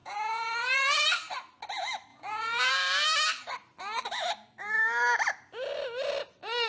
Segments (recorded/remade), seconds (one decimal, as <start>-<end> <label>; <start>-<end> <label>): 0.0-1.0 remade; 1.0-2.1 recorded; 2.1-2.7 remade; 2.7-6.7 recorded